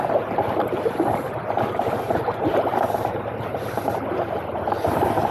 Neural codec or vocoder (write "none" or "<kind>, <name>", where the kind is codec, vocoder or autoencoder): none